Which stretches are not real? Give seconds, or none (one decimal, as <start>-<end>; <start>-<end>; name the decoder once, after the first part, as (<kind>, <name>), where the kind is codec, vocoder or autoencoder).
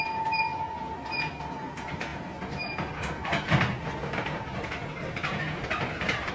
none